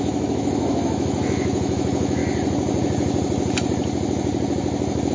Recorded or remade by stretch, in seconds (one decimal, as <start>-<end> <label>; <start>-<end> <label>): 0.0-2.2 remade; 2.2-5.1 recorded